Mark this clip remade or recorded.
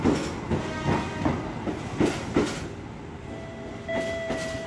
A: recorded